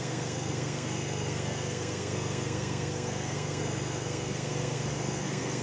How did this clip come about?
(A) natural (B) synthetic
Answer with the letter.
B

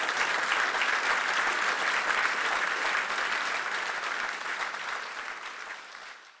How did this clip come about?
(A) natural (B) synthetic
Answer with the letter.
A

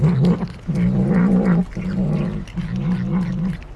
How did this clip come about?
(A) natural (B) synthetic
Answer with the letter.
A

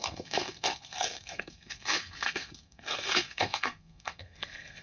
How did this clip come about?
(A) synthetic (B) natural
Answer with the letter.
A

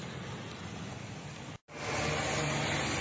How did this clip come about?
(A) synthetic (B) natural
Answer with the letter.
B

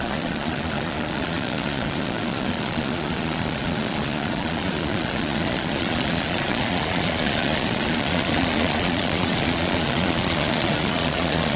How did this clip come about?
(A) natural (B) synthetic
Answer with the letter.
B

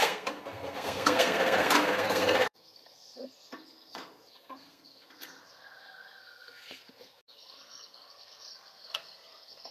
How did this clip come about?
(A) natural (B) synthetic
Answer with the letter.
B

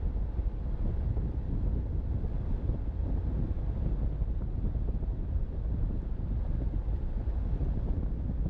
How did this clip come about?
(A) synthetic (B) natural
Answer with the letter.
B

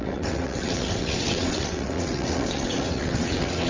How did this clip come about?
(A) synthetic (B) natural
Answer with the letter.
A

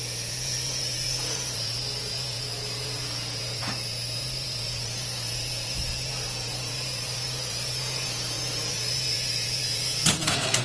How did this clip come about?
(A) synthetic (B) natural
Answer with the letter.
A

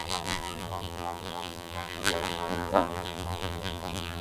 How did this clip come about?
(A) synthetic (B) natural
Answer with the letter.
A